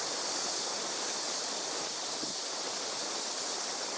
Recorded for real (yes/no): yes